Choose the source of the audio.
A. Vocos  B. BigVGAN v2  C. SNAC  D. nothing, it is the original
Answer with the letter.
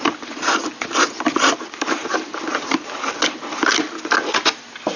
D